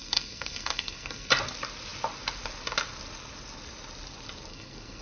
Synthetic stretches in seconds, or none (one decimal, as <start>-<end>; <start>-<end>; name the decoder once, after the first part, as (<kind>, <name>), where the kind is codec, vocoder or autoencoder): 0.0-1.3 (codec, SNAC); 4.5-5.0